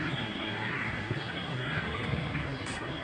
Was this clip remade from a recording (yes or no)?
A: yes